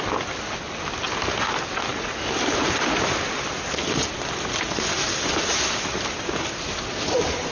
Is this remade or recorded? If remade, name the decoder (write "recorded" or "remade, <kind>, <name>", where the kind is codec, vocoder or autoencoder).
recorded